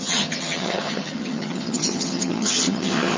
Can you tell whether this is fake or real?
fake